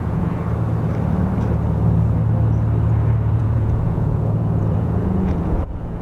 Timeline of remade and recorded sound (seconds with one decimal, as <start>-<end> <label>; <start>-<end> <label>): 0.0-0.4 remade; 0.4-3.4 recorded; 3.4-6.0 remade